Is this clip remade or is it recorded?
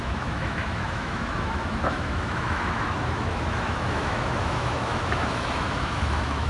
remade